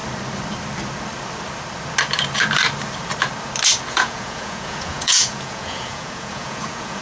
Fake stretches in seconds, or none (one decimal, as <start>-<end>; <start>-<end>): 3.9-7.0